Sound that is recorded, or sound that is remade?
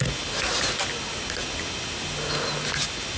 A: recorded